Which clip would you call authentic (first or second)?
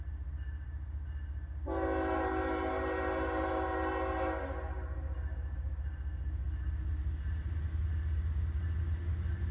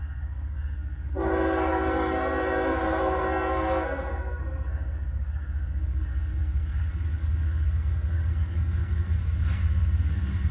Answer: first